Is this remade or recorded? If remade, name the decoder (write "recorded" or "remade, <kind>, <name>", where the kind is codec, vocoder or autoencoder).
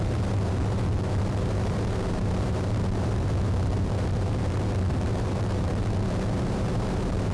remade, vocoder, BigVGAN v2